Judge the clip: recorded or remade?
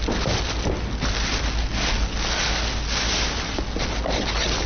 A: recorded